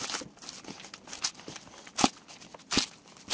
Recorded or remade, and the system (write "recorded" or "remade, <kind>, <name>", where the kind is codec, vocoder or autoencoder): recorded